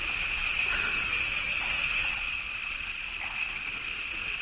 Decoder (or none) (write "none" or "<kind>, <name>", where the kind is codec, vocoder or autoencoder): none